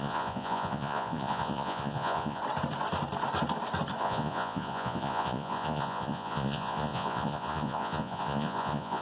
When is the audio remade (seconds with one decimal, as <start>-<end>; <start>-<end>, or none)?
0.0-2.4; 4.0-9.0